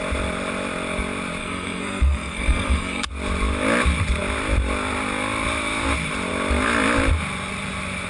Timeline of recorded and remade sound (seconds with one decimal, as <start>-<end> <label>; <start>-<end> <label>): 0.0-1.4 recorded; 1.4-3.1 remade; 3.1-8.1 recorded